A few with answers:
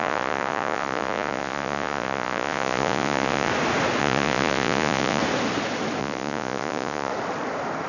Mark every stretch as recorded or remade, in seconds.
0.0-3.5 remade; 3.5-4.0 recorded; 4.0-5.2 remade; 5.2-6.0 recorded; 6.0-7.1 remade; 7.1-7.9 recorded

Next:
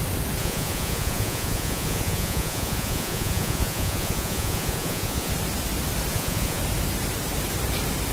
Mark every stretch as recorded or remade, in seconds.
0.0-0.4 recorded; 0.4-5.3 remade; 5.3-6.1 recorded; 6.1-6.6 remade; 6.6-8.1 recorded

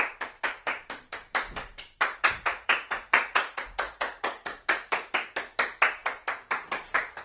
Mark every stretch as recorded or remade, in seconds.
0.0-2.2 recorded; 2.2-5.1 remade; 5.1-7.2 recorded

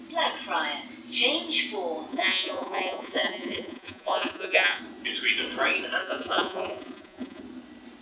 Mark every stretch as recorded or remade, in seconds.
0.0-2.1 recorded; 2.1-4.8 remade; 4.8-6.0 recorded; 6.0-7.4 remade; 7.4-8.0 recorded

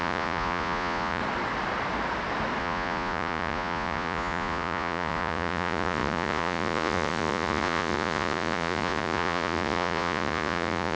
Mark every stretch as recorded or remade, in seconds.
0.0-1.2 remade; 1.2-2.6 recorded; 2.6-10.9 remade

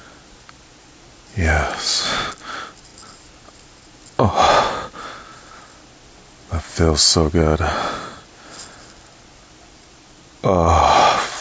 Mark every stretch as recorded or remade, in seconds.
0.0-11.4 recorded